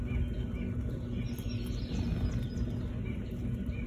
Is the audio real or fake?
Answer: real